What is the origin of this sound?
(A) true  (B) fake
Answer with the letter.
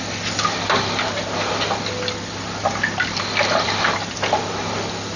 A